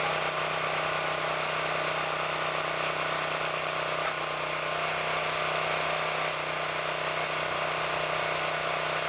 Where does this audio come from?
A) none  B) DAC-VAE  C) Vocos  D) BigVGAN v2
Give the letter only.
A